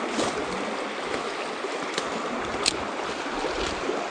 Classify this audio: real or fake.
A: real